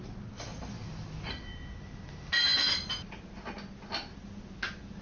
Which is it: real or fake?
real